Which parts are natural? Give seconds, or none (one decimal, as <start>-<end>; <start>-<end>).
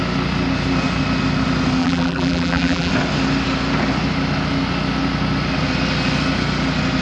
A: 0.0-1.8; 2.9-7.0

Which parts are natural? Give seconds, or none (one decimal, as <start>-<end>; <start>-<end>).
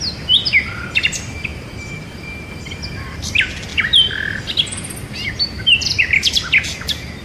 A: 0.0-1.5; 2.7-7.2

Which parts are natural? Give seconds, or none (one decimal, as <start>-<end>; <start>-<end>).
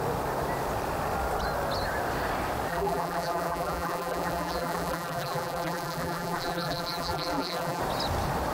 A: 0.0-2.7; 7.8-8.5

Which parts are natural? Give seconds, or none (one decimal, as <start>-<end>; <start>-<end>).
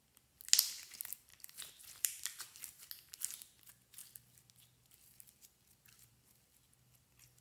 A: 0.0-1.3; 2.9-7.4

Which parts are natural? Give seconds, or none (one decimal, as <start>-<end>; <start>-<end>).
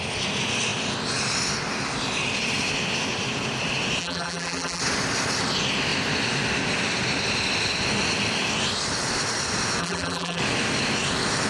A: 0.0-4.0; 4.8-9.8; 10.4-11.5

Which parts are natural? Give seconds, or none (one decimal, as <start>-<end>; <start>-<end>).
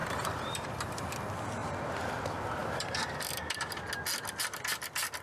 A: 1.0-2.6; 3.3-5.2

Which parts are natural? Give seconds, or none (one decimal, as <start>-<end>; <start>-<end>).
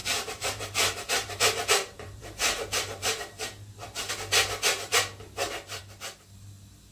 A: 4.1-6.9